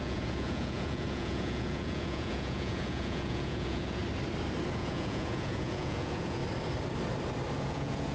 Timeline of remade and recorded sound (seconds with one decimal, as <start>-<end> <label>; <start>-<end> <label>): 0.0-4.0 remade; 4.0-4.7 recorded; 4.7-6.4 remade; 6.4-7.6 recorded; 7.6-8.1 remade